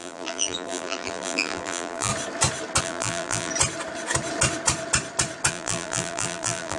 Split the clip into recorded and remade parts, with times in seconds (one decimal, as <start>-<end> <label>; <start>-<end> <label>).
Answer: 0.0-2.1 remade; 2.1-2.8 recorded; 2.8-3.5 remade; 3.5-5.5 recorded; 5.5-6.8 remade

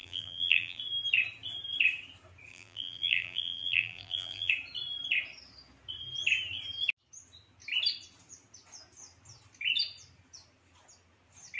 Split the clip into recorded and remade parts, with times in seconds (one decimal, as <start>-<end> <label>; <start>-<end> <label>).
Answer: 0.0-0.8 remade; 0.8-2.5 recorded; 2.5-4.5 remade; 4.5-11.6 recorded

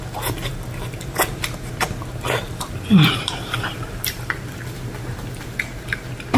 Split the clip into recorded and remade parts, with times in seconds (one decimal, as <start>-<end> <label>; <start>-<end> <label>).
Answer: 0.0-0.5 recorded; 0.5-4.3 remade; 4.3-6.4 recorded

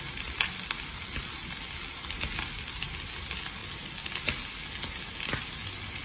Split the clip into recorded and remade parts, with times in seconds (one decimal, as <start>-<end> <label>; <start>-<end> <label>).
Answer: 0.0-6.0 recorded

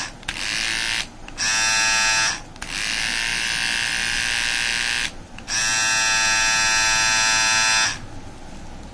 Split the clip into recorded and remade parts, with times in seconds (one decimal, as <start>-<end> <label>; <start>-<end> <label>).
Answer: 0.0-3.3 recorded; 3.3-4.2 remade; 4.2-8.9 recorded